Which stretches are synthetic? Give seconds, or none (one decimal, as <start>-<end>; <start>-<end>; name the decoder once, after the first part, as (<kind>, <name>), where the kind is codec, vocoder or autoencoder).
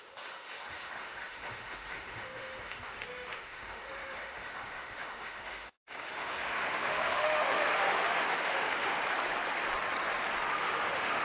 0.0-9.0 (autoencoder, DAC-VAE); 10.5-11.2